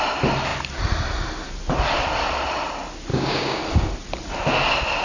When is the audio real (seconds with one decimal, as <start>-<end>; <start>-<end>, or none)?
0.0-3.1; 3.6-5.0